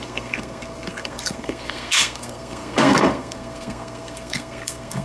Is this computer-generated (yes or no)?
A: yes